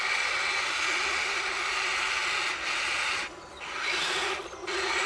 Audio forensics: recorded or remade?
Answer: recorded